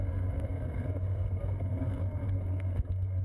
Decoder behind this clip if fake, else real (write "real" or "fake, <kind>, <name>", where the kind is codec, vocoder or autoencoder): fake, codec, SNAC